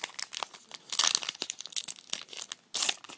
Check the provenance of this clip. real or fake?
real